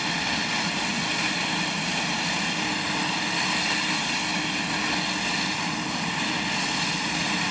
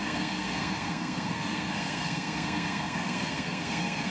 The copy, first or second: second